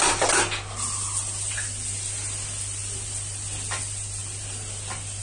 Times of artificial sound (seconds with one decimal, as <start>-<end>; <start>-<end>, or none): none